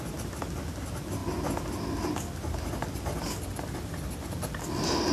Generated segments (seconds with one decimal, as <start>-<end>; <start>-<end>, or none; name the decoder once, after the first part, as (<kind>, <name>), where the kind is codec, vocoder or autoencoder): none